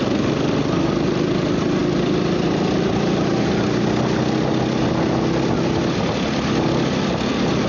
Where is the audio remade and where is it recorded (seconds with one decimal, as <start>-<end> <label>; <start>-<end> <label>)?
0.0-7.7 recorded